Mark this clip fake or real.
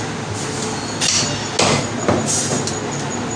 real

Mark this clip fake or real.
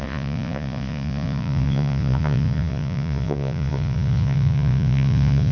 fake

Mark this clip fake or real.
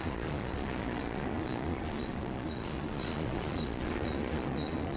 fake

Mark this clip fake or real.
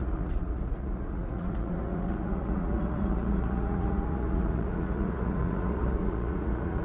fake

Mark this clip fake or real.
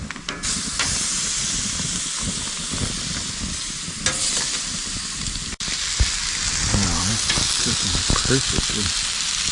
real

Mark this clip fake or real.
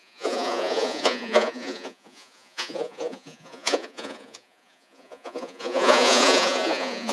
fake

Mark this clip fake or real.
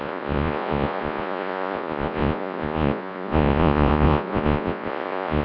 fake